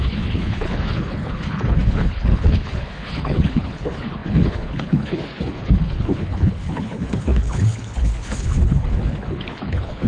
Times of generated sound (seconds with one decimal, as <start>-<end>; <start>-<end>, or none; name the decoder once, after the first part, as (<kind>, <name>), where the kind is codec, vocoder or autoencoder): 0.0-10.1 (codec, HILCodec)

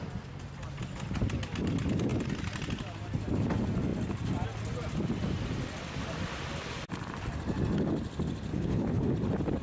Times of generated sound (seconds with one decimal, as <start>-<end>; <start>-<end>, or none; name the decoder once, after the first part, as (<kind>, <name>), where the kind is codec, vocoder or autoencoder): 8.5-9.1 (codec, HILCodec)

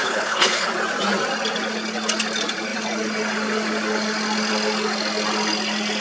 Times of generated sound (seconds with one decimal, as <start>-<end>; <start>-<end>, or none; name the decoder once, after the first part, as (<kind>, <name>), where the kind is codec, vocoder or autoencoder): 0.0-0.7 (codec, HILCodec)